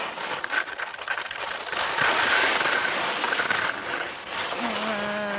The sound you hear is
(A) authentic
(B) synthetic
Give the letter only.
A